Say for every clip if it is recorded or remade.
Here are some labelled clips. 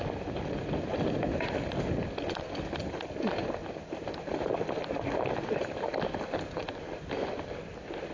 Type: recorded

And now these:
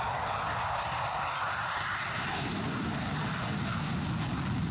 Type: recorded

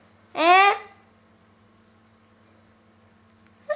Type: recorded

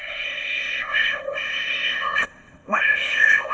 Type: remade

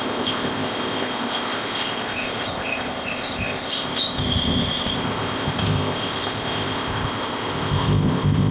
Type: remade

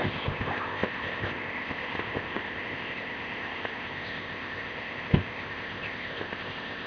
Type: remade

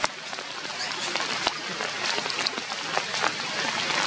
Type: recorded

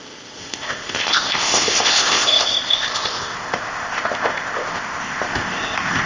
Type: remade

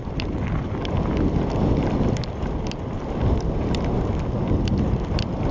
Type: recorded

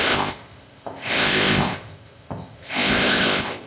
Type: remade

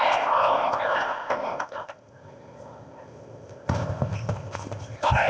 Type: remade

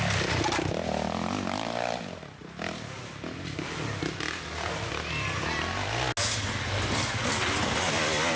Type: recorded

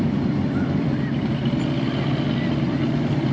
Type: recorded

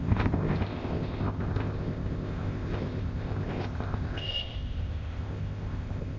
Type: remade